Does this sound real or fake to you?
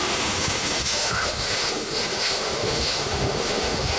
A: fake